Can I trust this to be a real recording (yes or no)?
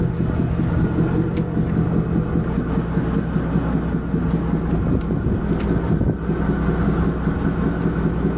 yes